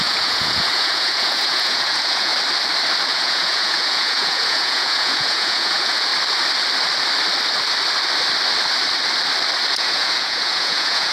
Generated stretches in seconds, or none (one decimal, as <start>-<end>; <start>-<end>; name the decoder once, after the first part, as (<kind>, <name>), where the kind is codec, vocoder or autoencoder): 0.0-2.3 (vocoder, Vocos); 3.1-6.1; 9.7-11.1